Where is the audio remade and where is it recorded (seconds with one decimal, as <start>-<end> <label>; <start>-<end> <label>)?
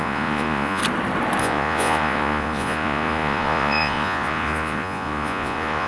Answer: 0.0-0.8 remade; 0.8-1.4 recorded; 1.4-5.9 remade